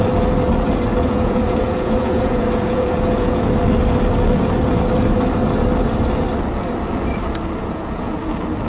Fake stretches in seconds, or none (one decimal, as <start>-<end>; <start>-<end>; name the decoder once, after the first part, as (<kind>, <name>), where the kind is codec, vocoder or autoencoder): 0.9-3.4 (vocoder, Vocos); 7.6-8.2